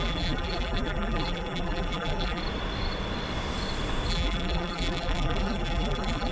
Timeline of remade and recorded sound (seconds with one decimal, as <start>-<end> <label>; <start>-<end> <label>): 0.0-2.4 remade; 2.4-4.1 recorded; 4.1-6.3 remade